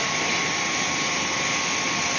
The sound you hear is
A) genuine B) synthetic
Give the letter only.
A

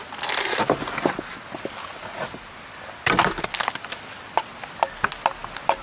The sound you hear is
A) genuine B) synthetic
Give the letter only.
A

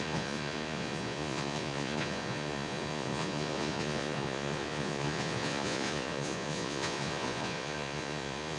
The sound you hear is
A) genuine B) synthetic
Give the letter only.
B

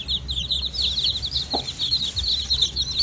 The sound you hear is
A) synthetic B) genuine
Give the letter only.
B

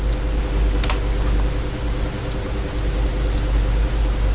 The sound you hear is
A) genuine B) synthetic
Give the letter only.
A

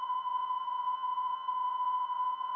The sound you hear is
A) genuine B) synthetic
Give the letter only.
B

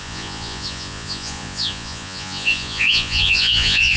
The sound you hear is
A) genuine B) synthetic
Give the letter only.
B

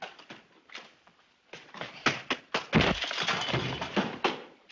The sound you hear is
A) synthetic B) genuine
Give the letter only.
B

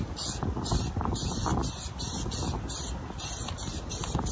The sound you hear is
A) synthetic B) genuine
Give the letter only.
B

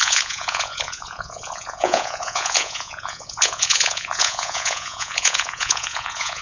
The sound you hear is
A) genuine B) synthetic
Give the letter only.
B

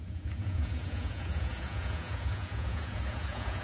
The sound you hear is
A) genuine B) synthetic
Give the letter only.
B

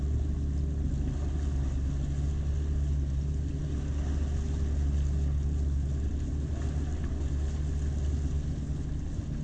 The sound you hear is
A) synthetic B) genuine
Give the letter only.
B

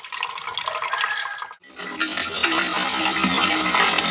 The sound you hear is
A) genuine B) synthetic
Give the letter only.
A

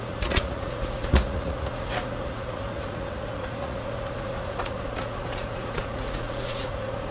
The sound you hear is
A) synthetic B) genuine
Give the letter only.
A